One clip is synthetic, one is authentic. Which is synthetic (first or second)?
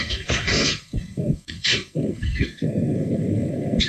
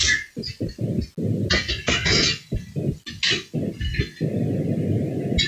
first